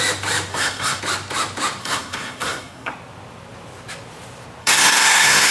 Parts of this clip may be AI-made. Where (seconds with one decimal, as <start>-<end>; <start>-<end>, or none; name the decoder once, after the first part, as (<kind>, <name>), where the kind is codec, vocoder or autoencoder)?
0.5-1.0 (codec, SNAC); 1.8-2.9; 4.6-5.5